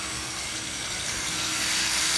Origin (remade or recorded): remade